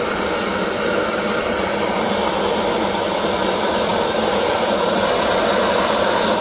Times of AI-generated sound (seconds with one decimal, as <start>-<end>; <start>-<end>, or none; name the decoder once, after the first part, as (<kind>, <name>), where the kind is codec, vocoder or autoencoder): 0.0-0.5 (vocoder, BigVGAN v2); 1.6-6.4